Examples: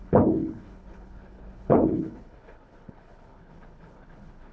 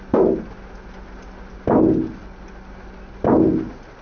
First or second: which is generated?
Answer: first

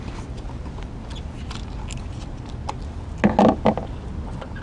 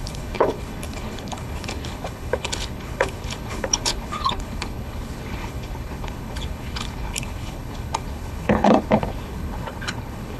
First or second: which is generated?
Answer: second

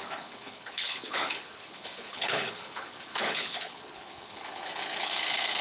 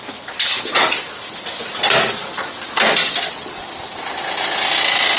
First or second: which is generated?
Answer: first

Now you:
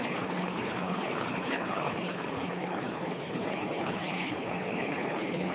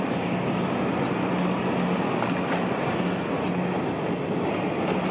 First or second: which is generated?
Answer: first